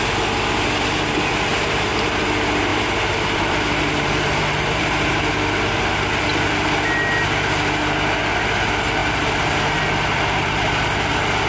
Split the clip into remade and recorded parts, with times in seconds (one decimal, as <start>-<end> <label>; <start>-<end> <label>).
0.0-1.5 recorded; 1.5-2.2 remade; 2.2-2.7 recorded; 2.7-5.3 remade; 5.3-9.0 recorded; 9.0-11.5 remade